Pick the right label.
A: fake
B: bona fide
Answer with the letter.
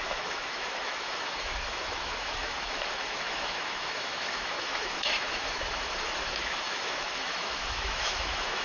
A